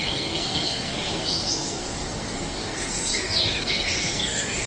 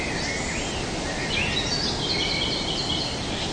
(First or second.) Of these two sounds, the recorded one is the second